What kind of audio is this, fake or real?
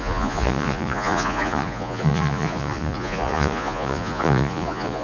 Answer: fake